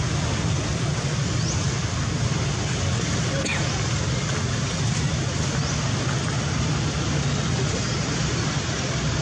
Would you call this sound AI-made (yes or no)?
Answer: no